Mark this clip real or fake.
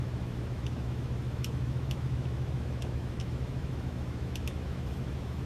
fake